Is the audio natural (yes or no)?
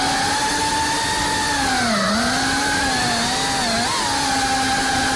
yes